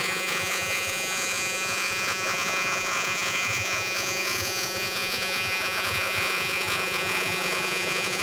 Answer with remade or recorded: remade